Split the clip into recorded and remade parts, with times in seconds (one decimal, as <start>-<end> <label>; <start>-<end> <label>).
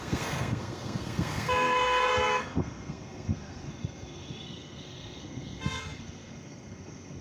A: 0.0-7.2 remade